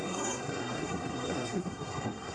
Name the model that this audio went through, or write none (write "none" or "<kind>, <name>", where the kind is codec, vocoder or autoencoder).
codec, SNAC